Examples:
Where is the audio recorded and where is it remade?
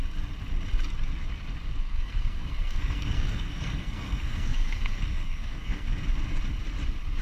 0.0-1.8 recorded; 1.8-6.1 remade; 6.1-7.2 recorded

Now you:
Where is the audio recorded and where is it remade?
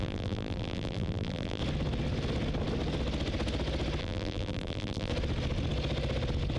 0.0-1.6 remade; 1.6-4.0 recorded; 4.0-5.1 remade; 5.1-6.6 recorded